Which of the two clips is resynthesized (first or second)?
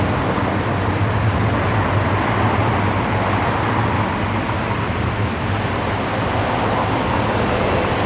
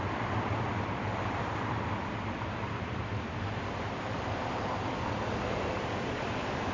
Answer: second